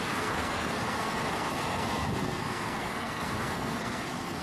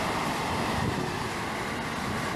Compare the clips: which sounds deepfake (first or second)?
first